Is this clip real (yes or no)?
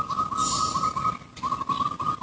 yes